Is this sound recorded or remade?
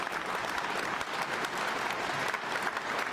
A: recorded